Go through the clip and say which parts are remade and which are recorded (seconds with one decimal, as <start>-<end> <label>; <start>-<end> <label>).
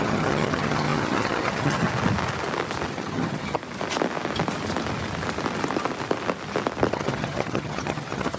0.0-1.9 remade; 1.9-2.9 recorded; 2.9-3.6 remade; 3.6-6.9 recorded; 6.9-8.4 remade